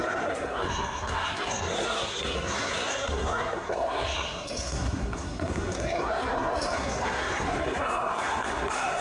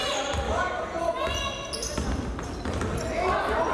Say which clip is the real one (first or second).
second